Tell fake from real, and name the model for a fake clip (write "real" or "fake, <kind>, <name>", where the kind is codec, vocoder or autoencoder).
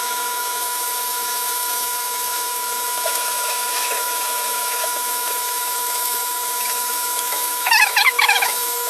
fake, autoencoder, DAC-VAE